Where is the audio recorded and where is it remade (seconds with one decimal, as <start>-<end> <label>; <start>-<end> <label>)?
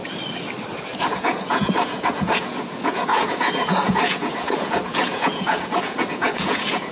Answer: 0.0-1.0 recorded; 1.0-6.9 remade